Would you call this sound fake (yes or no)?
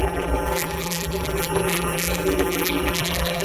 yes